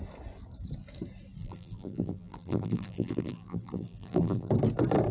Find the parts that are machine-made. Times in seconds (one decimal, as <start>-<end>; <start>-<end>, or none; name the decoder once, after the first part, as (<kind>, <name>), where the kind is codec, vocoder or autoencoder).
1.4-4.5 (vocoder, BigVGAN v2)